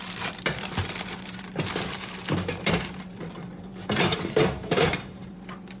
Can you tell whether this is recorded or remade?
remade